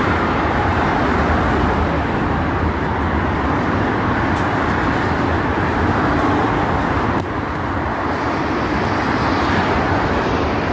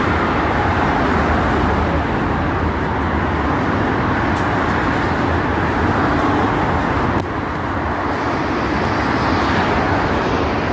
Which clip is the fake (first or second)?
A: first